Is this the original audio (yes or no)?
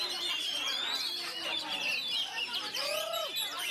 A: yes